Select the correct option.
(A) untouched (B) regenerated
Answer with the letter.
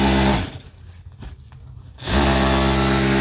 A